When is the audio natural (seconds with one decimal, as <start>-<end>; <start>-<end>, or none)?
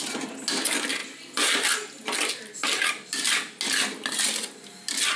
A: 0.0-5.2